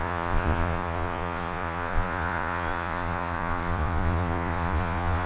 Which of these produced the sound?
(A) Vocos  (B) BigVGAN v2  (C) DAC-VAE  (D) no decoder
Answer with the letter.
A